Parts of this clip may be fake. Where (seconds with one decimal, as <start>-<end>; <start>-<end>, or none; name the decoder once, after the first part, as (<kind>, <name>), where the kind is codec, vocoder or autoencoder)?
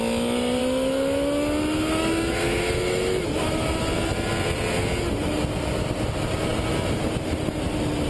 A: 0.6-3.8 (autoencoder, DAC-VAE)